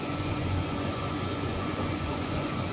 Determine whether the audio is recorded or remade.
remade